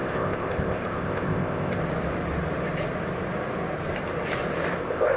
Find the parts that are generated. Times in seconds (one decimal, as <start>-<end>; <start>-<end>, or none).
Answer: 0.0-1.8; 4.8-5.2